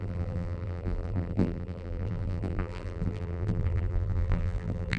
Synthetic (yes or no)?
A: yes